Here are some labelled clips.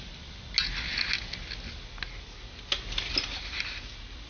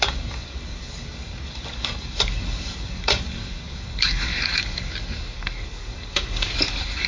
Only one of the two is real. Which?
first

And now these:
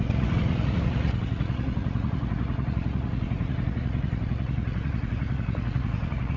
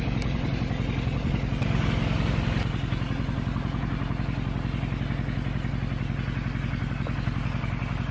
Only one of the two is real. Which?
second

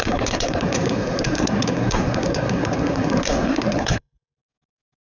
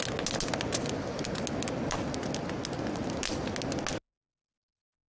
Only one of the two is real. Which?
second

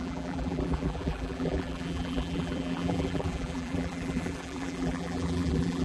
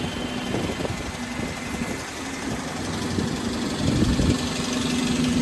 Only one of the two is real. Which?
second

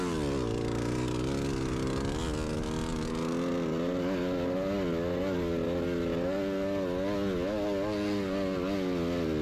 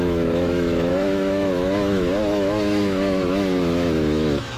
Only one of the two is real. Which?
first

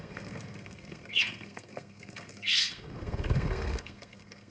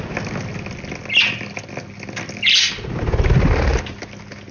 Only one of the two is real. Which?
second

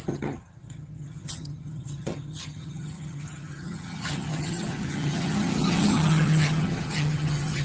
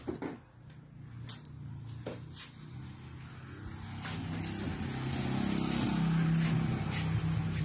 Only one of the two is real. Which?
second